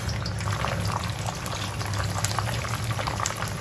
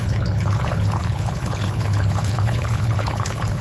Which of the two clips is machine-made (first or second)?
second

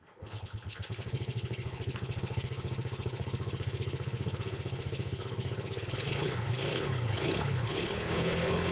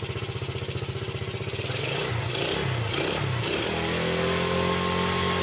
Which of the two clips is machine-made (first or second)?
first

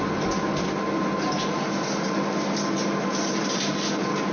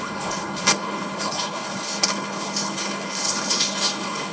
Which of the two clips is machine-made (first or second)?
second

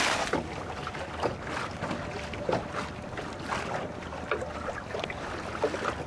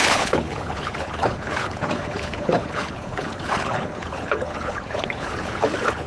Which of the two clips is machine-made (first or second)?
second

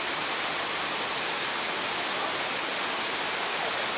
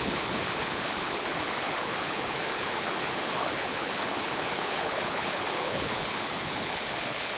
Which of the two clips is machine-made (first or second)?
second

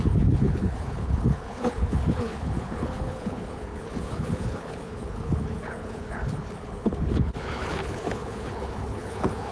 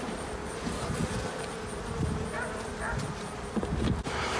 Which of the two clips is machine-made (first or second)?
first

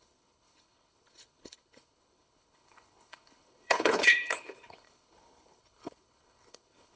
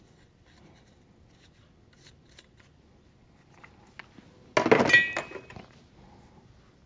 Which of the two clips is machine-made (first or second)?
first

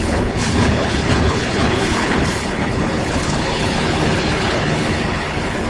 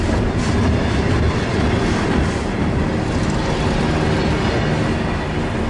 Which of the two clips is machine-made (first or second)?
first